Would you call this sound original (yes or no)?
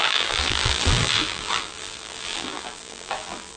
no